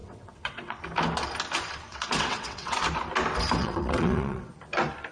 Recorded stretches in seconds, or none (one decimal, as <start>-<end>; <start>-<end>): 0.8-1.9; 2.8-3.6; 4.5-5.1

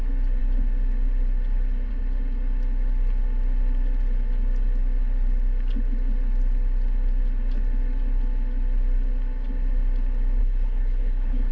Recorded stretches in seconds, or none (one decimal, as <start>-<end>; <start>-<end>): 0.0-10.4

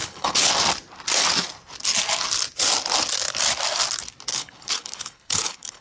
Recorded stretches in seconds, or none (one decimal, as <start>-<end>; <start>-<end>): 0.5-4.3

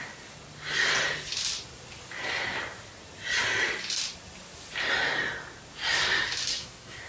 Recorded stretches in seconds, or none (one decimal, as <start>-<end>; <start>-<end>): 0.0-6.5

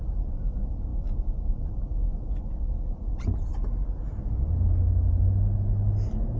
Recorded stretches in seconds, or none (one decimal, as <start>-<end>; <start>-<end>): 0.0-6.4

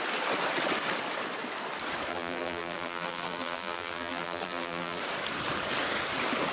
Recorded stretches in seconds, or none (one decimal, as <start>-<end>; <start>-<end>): 0.0-2.1; 5.0-6.5

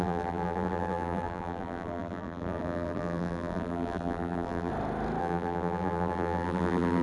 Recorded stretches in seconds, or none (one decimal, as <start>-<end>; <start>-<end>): 4.7-5.2

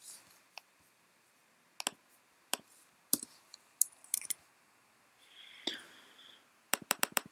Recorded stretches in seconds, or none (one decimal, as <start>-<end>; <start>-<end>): 1.4-2.0